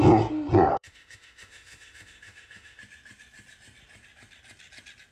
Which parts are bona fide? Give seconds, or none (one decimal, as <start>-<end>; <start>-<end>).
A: 0.0-0.7; 2.8-5.1